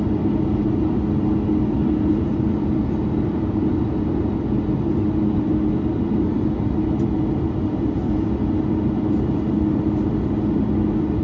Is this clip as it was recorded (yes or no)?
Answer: yes